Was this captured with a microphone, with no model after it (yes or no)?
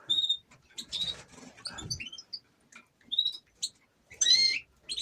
yes